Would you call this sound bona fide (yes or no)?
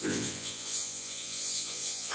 no